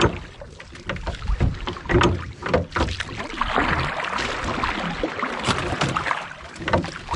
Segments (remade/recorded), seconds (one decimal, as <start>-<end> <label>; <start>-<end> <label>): 0.0-7.2 recorded